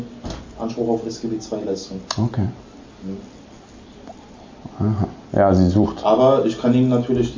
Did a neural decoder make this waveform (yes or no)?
no